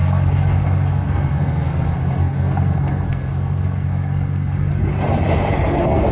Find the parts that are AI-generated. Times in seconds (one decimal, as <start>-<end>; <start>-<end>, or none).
0.0-4.7; 5.5-6.1